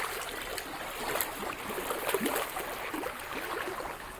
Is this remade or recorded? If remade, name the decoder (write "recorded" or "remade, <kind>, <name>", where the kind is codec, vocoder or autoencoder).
recorded